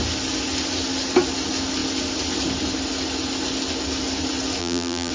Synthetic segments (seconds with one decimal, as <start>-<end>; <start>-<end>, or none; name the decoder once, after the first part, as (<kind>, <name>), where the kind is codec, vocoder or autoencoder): 4.6-5.1 (vocoder, BigVGAN v2)